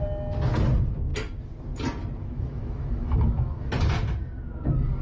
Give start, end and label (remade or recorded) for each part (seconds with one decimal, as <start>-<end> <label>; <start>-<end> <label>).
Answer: 0.0-2.2 recorded; 2.2-3.7 remade; 3.7-5.0 recorded